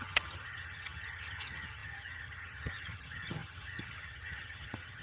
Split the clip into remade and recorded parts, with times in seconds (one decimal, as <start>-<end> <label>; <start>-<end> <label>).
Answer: 0.0-5.0 remade